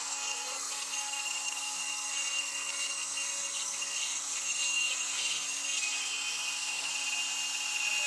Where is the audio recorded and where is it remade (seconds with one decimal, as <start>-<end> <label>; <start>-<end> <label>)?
0.0-6.9 remade; 6.9-8.1 recorded